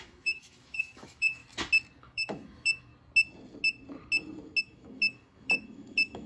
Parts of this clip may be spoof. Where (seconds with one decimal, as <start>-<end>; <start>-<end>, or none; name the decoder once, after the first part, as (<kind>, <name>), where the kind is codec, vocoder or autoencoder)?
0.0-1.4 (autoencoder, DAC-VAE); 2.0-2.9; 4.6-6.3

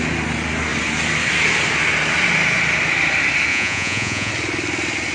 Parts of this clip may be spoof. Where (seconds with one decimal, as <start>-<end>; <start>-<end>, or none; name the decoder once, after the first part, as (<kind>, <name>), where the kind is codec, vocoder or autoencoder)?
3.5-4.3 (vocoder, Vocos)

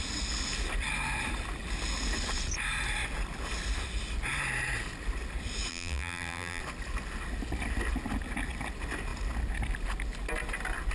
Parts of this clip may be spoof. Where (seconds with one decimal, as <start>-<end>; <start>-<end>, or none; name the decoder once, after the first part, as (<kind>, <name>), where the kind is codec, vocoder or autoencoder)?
5.7-6.6 (vocoder, BigVGAN v2)

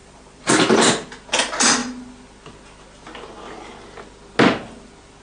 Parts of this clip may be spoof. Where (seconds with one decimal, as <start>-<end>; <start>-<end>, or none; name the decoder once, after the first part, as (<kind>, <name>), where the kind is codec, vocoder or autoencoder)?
0.0-1.1 (vocoder, BigVGAN v2)

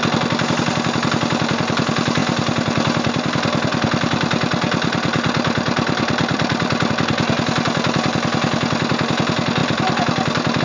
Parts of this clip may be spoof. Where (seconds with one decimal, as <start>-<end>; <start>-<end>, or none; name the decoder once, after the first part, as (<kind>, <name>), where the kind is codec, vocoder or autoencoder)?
2.2-6.9 (vocoder, BigVGAN v2); 9.6-10.6

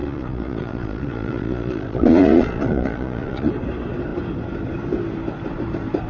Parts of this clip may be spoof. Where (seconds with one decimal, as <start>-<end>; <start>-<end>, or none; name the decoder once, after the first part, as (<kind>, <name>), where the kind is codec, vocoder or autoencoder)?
0.0-3.5 (vocoder, Vocos)

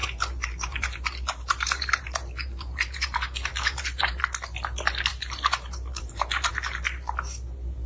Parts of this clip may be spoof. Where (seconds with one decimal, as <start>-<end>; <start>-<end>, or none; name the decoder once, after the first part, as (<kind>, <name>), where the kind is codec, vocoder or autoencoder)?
0.0-4.2 (vocoder, BigVGAN v2); 5.1-6.5

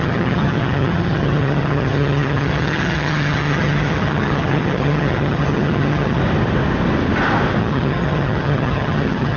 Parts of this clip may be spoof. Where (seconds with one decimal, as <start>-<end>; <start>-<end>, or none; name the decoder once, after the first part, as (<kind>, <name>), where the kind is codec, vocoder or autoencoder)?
0.0-6.2 (vocoder, HiFi-GAN); 7.6-9.4